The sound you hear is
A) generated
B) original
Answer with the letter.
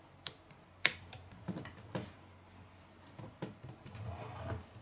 B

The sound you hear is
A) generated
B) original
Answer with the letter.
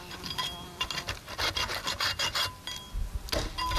B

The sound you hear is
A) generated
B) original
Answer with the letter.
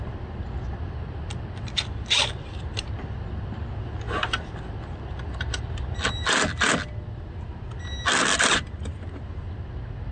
B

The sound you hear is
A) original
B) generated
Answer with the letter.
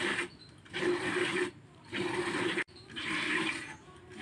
B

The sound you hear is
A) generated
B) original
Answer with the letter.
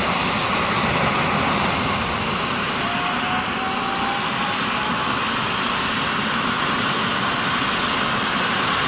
B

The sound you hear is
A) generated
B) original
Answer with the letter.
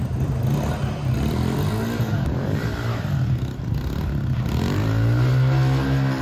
B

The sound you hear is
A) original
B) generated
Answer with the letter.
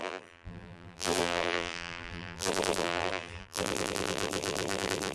B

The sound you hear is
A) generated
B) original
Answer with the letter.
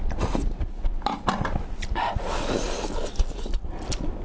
B